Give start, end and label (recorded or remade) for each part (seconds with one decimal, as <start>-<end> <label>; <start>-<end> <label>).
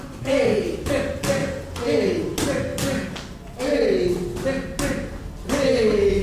0.0-6.2 recorded